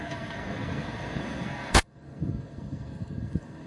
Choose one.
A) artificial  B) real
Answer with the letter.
A